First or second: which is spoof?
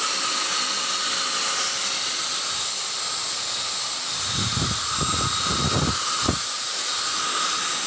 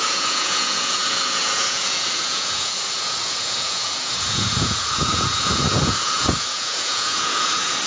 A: second